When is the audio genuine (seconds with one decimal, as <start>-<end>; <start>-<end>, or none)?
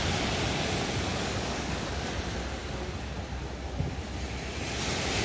0.0-1.1; 2.1-5.2